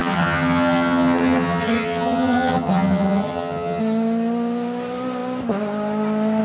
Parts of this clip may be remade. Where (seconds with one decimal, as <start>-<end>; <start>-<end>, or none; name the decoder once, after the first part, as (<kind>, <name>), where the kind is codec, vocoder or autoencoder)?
0.0-3.8 (vocoder, HiFi-GAN)